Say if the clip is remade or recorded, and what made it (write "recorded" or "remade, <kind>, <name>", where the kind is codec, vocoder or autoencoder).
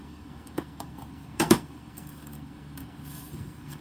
remade, codec, SNAC